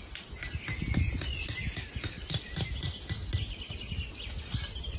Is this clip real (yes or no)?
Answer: yes